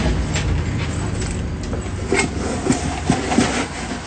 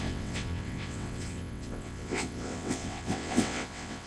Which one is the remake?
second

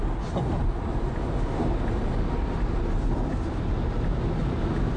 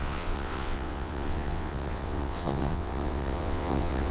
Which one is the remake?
second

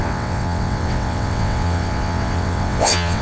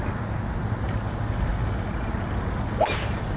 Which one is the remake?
first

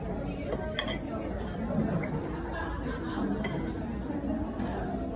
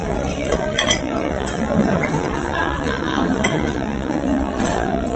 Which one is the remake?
second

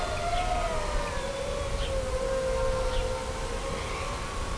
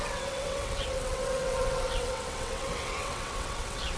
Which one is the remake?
second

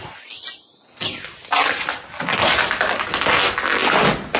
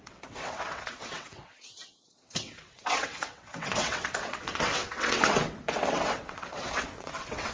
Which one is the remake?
second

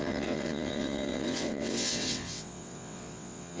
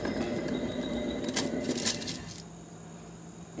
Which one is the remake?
first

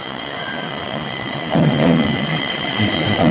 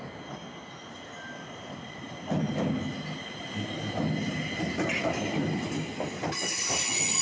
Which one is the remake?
first